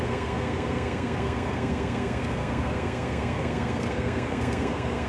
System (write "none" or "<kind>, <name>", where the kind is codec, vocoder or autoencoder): codec, SNAC